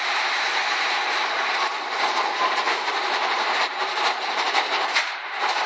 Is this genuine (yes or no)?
no